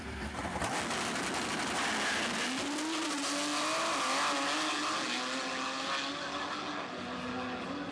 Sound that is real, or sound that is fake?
real